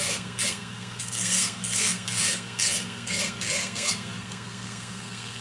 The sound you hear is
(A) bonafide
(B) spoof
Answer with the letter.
B